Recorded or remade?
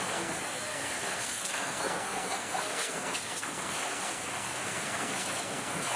remade